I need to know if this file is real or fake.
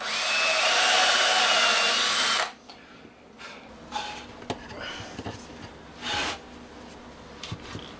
real